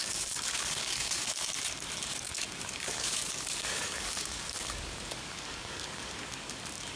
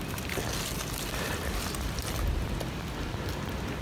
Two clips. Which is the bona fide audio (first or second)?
second